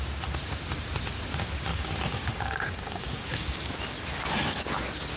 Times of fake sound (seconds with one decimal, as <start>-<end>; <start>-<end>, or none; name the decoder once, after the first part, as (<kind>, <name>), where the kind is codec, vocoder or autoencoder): 1.7-3.6 (codec, DAC)